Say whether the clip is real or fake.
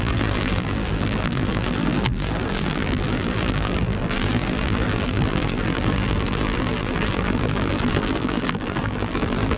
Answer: fake